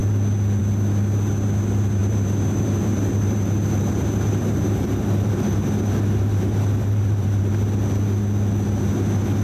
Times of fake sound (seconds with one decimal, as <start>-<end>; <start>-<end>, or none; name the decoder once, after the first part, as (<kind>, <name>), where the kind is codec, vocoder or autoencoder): 2.0-5.5 (vocoder, BigVGAN v2); 6.3-7.5